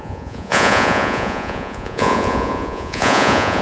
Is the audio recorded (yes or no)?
no